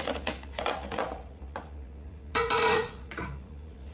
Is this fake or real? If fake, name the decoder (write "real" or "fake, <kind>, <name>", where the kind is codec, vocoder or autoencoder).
fake, vocoder, Vocos